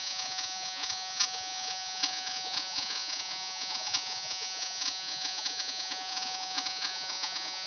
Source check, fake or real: fake